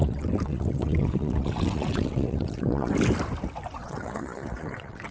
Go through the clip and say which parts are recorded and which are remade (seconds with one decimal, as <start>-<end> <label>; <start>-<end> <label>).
0.0-2.9 remade; 2.9-3.8 recorded; 3.8-5.1 remade